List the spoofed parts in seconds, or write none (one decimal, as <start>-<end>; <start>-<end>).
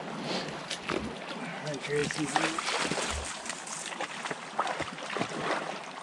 none